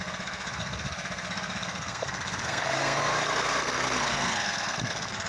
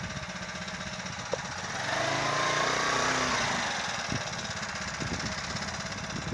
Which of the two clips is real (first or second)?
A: second